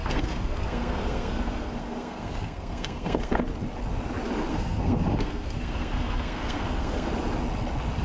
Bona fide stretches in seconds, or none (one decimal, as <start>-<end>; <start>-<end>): 3.4-4.5; 7.1-8.0